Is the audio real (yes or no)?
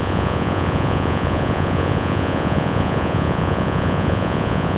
no